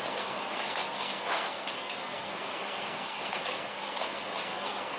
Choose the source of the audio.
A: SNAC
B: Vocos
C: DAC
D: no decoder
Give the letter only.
A